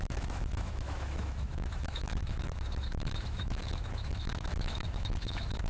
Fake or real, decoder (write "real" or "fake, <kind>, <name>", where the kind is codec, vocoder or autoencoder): fake, autoencoder, DAC-VAE